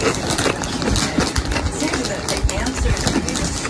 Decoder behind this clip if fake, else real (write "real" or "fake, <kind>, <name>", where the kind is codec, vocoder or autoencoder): real